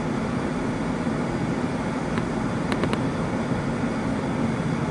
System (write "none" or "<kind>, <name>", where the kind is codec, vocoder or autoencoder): none